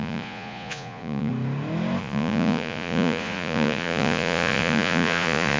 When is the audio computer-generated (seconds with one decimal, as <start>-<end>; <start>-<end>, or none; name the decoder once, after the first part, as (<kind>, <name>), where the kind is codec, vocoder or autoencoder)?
0.0-1.3 (vocoder, Vocos); 2.0-5.6